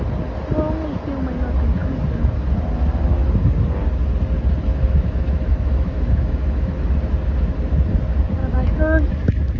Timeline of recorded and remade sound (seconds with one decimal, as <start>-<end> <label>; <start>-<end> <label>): 0.0-4.7 recorded; 4.7-6.9 remade; 6.9-8.4 recorded; 8.4-9.1 remade; 9.1-9.6 recorded